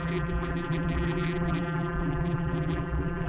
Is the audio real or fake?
fake